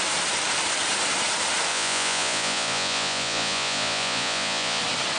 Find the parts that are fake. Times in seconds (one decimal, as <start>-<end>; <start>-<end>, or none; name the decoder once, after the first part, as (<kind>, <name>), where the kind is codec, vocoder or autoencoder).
1.7-4.8 (vocoder, Vocos)